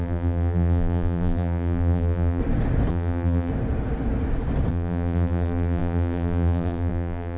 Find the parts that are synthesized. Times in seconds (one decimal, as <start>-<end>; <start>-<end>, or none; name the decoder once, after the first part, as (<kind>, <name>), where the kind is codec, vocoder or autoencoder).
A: 0.0-2.4 (vocoder, BigVGAN v2); 2.9-3.5; 4.7-7.4